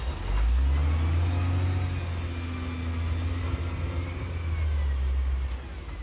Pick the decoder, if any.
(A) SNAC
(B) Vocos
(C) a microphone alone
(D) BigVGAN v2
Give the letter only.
C